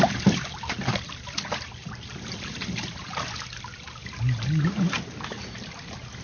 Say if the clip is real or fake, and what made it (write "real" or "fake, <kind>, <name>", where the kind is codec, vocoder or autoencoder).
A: real